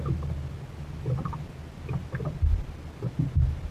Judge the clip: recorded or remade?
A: recorded